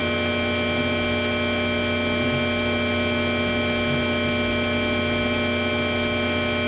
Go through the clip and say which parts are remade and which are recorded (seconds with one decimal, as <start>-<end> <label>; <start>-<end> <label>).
0.0-6.7 recorded